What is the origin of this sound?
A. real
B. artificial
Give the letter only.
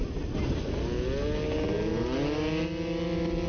A